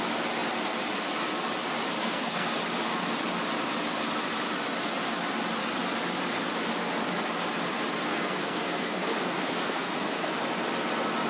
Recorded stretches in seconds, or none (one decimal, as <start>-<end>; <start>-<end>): 0.0-2.0; 2.5-8.1; 10.3-11.3